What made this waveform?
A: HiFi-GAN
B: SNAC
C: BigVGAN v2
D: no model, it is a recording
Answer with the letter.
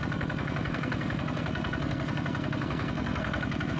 B